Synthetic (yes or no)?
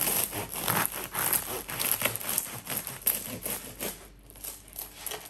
no